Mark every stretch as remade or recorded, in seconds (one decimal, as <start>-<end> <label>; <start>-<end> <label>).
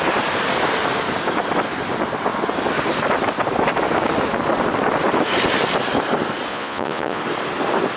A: 0.0-6.5 recorded; 6.5-7.2 remade; 7.2-8.0 recorded